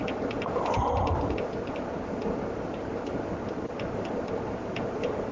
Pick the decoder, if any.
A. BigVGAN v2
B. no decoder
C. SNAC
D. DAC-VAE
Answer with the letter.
B